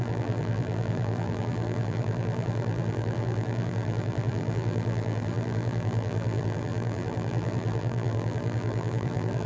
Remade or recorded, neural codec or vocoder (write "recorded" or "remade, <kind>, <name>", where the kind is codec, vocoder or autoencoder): remade, vocoder, BigVGAN v2